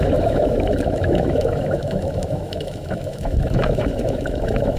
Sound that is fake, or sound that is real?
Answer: fake